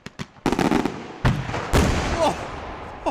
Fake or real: real